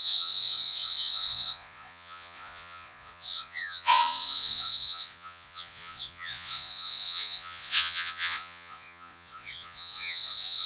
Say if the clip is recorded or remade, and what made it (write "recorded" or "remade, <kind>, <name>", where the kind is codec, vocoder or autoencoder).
remade, vocoder, Vocos